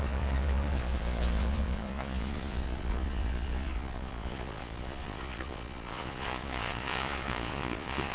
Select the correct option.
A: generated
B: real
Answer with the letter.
A